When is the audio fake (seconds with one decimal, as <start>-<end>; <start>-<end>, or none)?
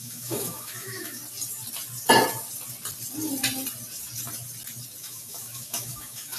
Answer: 0.0-1.2; 5.0-6.4